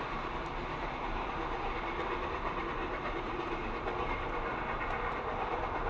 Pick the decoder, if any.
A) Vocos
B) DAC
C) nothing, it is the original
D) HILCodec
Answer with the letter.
C